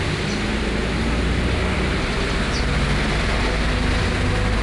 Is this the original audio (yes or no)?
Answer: yes